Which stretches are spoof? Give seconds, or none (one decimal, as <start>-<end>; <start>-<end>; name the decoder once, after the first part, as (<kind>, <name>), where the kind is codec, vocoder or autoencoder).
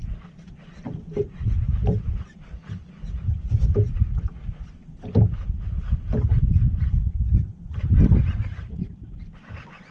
none